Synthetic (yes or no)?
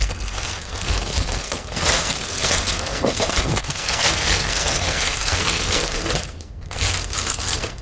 yes